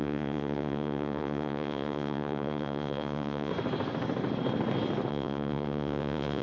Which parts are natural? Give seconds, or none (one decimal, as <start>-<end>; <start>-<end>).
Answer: 3.5-5.1